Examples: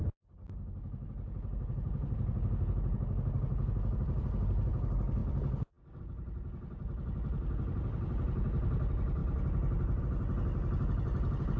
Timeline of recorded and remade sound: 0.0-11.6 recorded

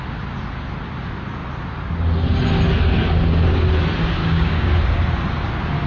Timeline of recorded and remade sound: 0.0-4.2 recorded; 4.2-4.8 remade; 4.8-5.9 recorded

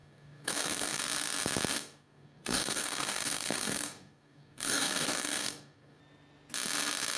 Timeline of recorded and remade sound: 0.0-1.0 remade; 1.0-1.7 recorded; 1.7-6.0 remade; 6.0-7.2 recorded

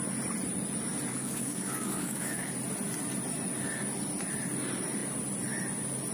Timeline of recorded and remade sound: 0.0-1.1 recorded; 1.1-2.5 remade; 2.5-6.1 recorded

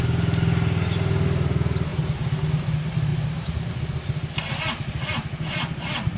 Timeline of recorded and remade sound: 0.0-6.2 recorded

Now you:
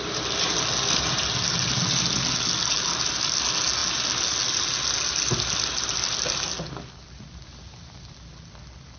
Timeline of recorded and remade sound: 0.0-9.0 recorded

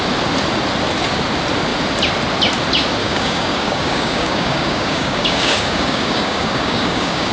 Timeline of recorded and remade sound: 0.0-3.0 recorded; 3.0-7.3 remade

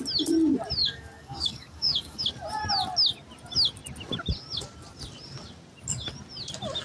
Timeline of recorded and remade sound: 0.0-0.8 recorded; 0.8-2.2 remade; 2.2-6.8 recorded